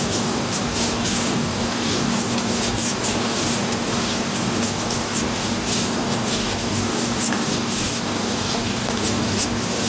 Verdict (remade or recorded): remade